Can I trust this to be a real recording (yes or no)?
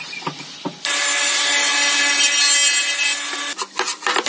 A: yes